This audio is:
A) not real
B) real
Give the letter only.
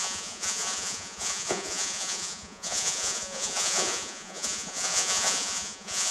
A